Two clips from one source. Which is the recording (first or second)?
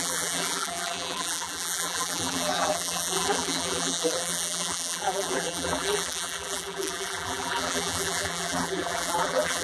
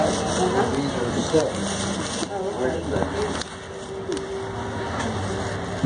second